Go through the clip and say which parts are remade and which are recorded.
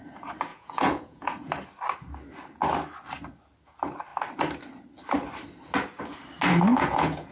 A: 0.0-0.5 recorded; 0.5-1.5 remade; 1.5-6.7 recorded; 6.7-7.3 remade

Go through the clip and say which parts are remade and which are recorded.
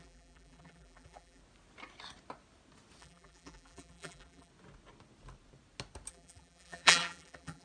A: 0.0-1.4 remade; 1.4-3.0 recorded; 3.0-4.5 remade; 4.5-6.1 recorded; 6.1-7.6 remade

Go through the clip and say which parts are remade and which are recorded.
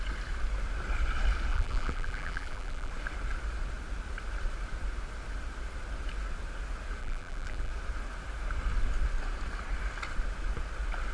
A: 0.0-1.5 recorded; 1.5-2.9 remade; 2.9-7.0 recorded; 7.0-7.7 remade; 7.7-11.1 recorded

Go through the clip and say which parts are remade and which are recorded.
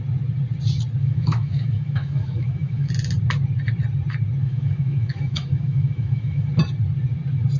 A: 0.0-1.0 recorded; 1.0-2.9 remade; 2.9-4.4 recorded; 4.4-6.5 remade; 6.5-7.6 recorded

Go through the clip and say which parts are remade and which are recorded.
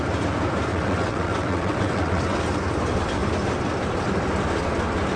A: 0.0-0.7 recorded; 0.7-2.4 remade; 2.4-5.2 recorded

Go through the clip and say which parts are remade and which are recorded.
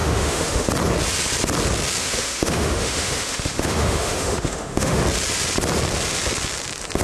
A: 0.0-0.7 remade; 0.7-2.0 recorded; 2.0-5.0 remade; 5.0-7.0 recorded